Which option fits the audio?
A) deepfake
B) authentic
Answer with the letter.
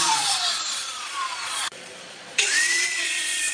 A